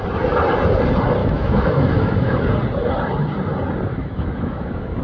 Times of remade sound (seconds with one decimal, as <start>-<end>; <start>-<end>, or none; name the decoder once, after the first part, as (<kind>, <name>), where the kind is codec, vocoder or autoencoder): 1.2-2.4 (autoencoder, DAC-VAE); 3.9-5.0